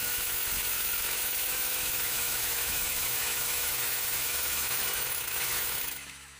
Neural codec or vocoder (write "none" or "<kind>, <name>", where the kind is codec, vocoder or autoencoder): autoencoder, DAC-VAE